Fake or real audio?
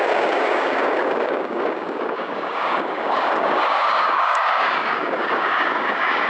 fake